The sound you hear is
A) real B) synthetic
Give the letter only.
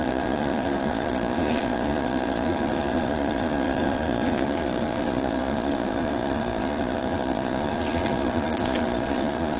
B